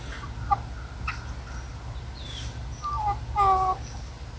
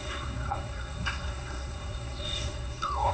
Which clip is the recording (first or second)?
first